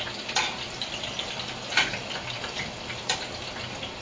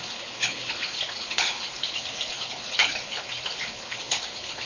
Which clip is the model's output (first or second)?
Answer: second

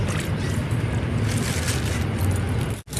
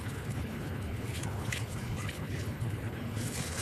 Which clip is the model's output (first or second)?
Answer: second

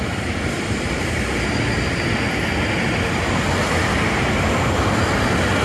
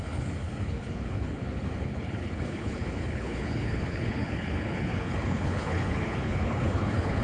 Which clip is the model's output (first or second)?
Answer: second